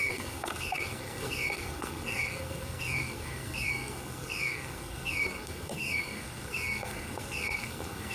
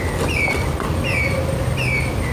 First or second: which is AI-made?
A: first